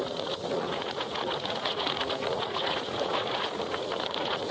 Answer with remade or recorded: remade